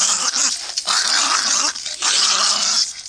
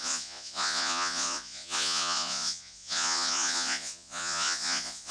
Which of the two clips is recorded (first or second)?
first